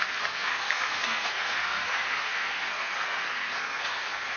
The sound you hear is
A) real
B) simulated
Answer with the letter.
B